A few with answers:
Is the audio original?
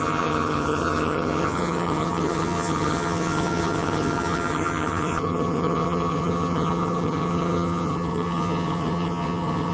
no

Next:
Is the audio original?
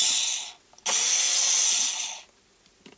yes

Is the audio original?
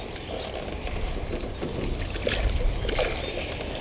yes